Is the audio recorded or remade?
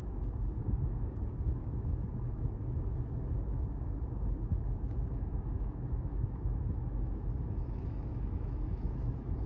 remade